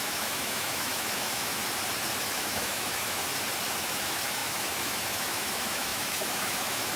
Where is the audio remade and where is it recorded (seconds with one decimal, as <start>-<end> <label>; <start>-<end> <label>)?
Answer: 0.0-1.6 remade; 1.6-2.2 recorded; 2.2-3.2 remade; 3.2-3.8 recorded; 3.8-7.0 remade